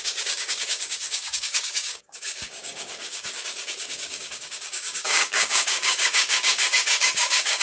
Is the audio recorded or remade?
remade